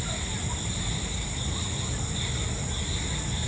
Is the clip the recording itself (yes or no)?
yes